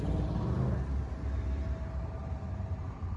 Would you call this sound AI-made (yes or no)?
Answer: no